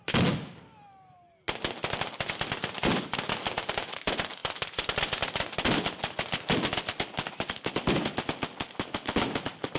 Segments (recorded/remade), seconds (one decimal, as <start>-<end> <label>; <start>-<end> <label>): 0.0-9.8 recorded